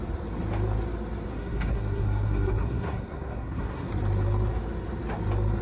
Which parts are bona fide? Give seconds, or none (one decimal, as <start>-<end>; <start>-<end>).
0.0-1.3; 3.9-5.6